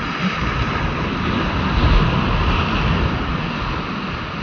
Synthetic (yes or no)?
no